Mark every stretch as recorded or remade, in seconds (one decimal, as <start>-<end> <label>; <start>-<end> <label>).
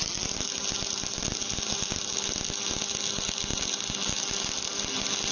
0.0-5.3 recorded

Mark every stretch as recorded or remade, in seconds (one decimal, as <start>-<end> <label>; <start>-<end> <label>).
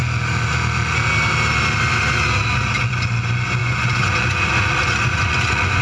0.0-3.6 recorded; 3.6-5.8 remade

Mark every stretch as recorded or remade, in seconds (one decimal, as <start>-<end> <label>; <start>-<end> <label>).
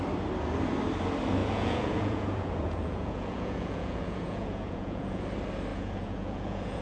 0.0-1.4 recorded; 1.4-5.2 remade; 5.2-5.7 recorded; 5.7-6.8 remade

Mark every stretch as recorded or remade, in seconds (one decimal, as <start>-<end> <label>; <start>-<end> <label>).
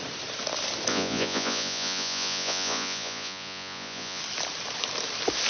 0.0-0.9 recorded; 0.9-4.2 remade; 4.2-5.5 recorded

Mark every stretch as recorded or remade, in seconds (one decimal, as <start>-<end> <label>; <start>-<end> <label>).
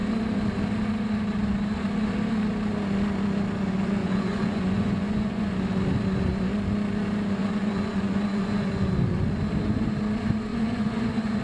0.0-4.0 recorded; 4.0-5.6 remade; 5.6-7.4 recorded; 7.4-8.7 remade; 8.7-10.5 recorded; 10.5-11.4 remade